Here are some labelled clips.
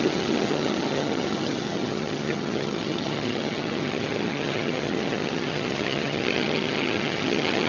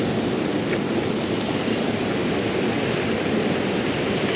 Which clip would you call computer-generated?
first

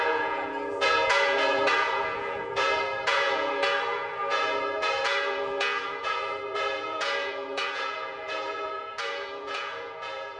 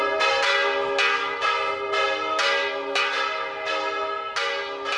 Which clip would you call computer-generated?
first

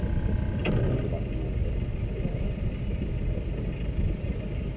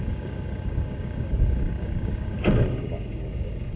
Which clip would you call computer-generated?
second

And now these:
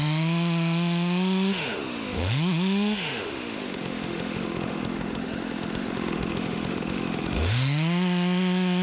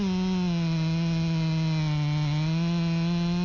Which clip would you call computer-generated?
first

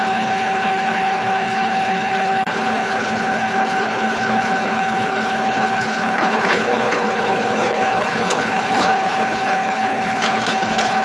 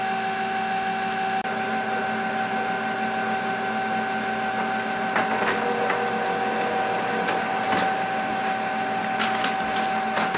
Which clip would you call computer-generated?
first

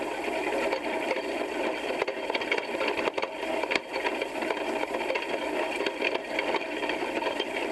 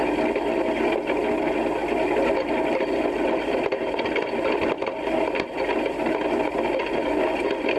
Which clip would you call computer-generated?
first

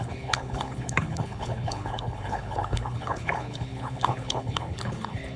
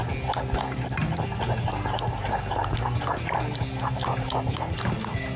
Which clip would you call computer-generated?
first